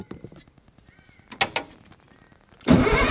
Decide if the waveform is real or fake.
real